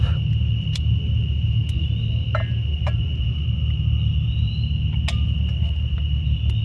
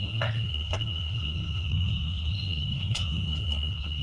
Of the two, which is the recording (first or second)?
first